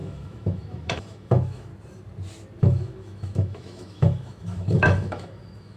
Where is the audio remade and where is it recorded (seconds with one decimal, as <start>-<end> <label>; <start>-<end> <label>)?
0.0-1.7 remade; 1.7-2.6 recorded; 2.6-5.8 remade